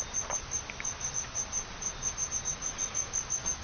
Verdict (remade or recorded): recorded